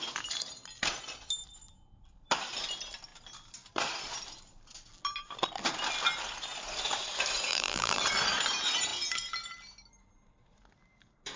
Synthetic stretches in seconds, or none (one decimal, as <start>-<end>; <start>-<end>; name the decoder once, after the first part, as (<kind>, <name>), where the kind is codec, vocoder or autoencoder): 7.5-8.0 (vocoder, BigVGAN v2)